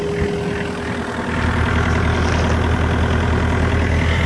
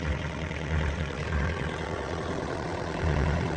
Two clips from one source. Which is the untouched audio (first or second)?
first